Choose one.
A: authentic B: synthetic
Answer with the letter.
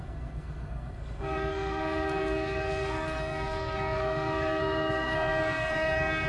B